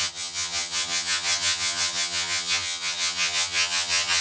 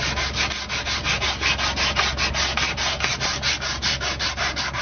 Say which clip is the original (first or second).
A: second